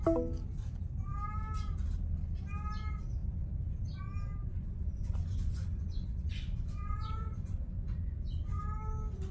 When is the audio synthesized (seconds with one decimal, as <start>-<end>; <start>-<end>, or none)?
4.4-8.6